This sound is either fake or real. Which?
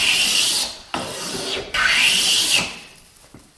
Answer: fake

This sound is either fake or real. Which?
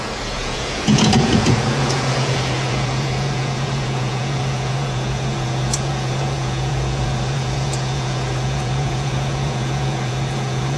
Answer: fake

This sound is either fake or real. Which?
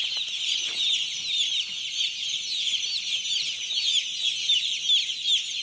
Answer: real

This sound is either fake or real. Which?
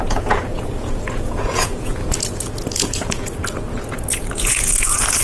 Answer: fake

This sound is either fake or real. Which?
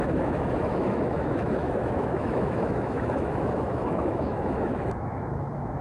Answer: fake